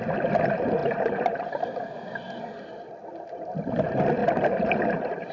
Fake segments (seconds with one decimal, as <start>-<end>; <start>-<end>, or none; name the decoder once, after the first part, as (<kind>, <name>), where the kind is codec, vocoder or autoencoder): 0.8-1.8 (vocoder, BigVGAN v2); 4.2-5.3